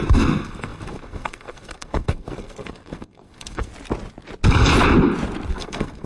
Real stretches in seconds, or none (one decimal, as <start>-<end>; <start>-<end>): 3.7-5.5